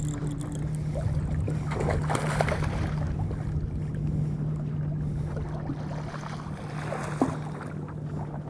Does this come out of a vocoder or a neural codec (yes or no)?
no